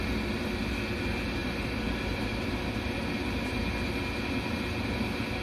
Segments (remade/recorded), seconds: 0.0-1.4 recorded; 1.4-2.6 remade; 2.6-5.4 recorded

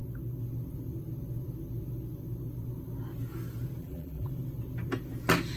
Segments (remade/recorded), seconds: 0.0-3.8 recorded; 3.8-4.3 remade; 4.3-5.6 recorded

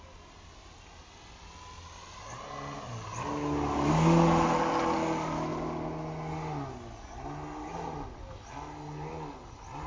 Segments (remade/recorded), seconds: 0.0-9.9 recorded